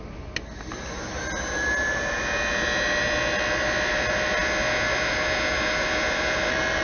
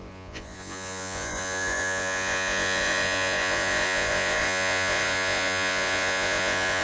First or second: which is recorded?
first